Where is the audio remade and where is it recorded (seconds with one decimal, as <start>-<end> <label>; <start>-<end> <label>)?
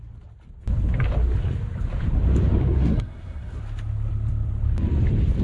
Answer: 0.0-2.6 recorded; 2.6-3.6 remade; 3.6-5.4 recorded